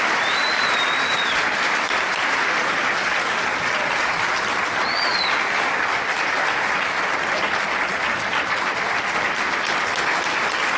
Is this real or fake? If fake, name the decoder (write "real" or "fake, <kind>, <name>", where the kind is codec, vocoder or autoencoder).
real